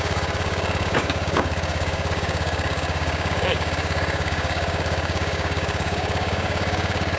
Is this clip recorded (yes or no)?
no